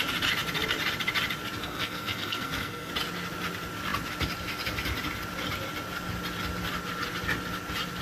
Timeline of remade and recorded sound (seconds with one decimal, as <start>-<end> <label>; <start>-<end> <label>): 0.0-1.6 recorded; 1.6-2.9 remade; 2.9-8.0 recorded